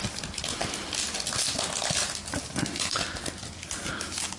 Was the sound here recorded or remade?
recorded